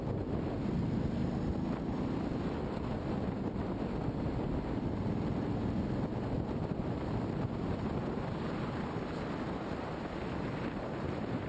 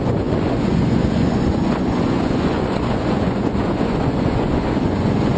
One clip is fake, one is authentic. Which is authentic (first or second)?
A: first